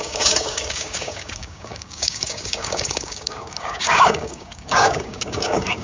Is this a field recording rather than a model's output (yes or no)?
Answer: no